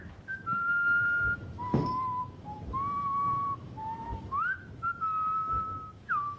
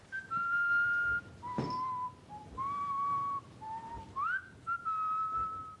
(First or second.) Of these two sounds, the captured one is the second